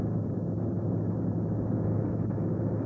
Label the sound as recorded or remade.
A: recorded